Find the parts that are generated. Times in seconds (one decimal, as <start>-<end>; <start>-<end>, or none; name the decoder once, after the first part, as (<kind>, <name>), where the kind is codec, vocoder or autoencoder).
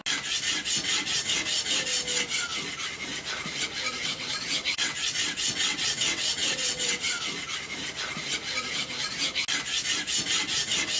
4.0-7.2 (vocoder, WaveNeXt)